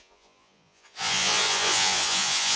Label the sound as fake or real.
fake